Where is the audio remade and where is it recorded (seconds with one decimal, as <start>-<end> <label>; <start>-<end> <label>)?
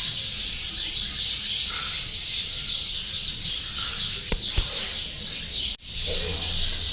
0.0-6.9 recorded